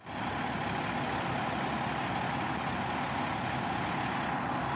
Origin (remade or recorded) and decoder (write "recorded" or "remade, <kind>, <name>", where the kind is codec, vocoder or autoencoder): recorded